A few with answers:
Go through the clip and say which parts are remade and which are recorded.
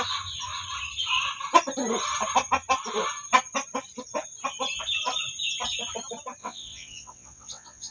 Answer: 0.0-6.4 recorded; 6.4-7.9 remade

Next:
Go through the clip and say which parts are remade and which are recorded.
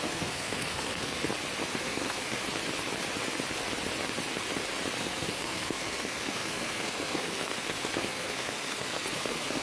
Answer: 0.0-1.2 remade; 1.2-1.8 recorded; 1.8-2.4 remade; 2.4-5.0 recorded; 5.0-9.6 remade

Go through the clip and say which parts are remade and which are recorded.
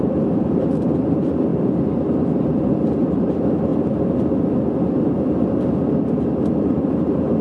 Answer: 0.0-3.7 remade; 3.7-6.6 recorded; 6.6-7.4 remade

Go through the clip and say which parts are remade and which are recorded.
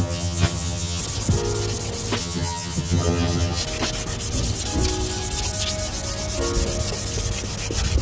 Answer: 0.0-1.0 remade; 1.0-2.2 recorded; 2.2-3.6 remade; 3.6-8.0 recorded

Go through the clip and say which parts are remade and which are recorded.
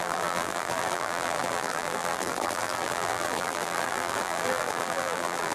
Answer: 0.0-5.5 remade